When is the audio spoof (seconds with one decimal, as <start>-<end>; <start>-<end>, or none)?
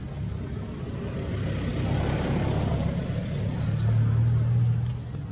none